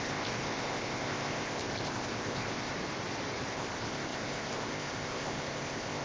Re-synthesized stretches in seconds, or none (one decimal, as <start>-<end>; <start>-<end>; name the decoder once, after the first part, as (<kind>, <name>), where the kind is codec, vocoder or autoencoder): 0.0-2.7 (codec, ZipCodec); 3.5-6.0